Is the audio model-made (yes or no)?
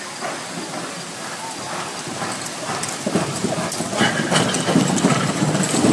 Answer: no